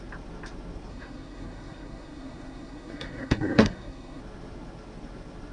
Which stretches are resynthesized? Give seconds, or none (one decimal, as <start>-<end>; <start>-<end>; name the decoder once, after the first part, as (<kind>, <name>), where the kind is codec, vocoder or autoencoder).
0.9-4.2 (codec, SNAC)